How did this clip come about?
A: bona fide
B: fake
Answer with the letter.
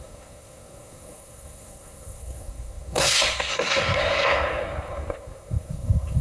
B